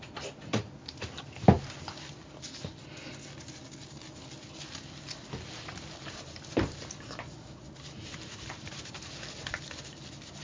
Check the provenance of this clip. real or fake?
real